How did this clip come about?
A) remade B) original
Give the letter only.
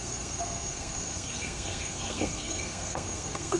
A